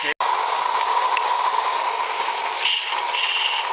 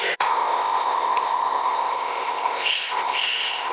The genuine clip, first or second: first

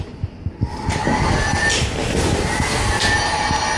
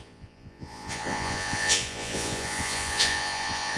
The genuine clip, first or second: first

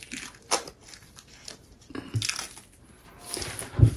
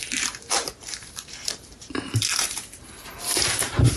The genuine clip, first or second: first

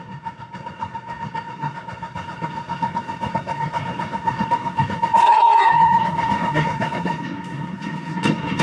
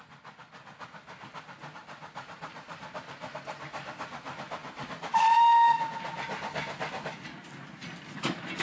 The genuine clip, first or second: second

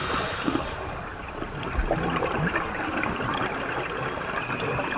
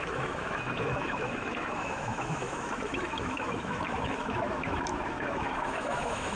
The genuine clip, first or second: first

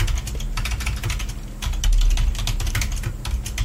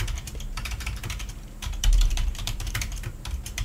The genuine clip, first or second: first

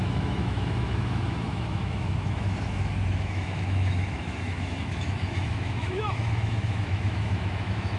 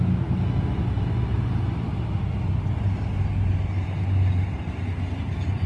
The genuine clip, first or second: second